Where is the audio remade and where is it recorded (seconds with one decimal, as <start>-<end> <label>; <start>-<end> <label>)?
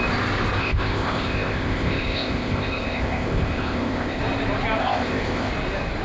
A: 0.0-0.6 recorded; 0.6-4.2 remade; 4.2-4.8 recorded; 4.8-5.5 remade; 5.5-6.0 recorded